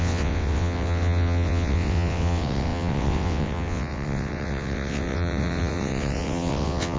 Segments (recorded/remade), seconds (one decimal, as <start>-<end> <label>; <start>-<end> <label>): 0.0-7.0 remade